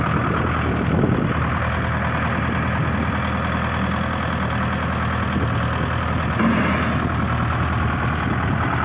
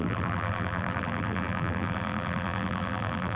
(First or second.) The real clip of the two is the first